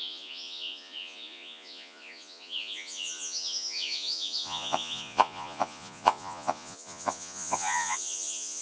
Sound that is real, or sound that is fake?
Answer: fake